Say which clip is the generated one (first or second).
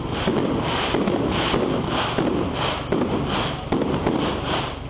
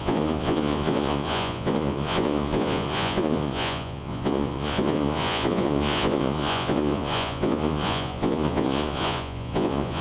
second